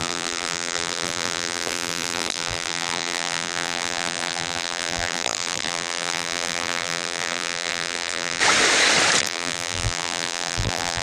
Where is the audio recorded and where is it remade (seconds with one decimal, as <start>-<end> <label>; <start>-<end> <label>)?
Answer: 0.0-8.4 remade; 8.4-9.2 recorded; 9.2-11.0 remade